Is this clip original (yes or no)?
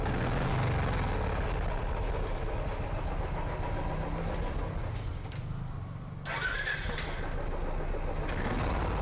yes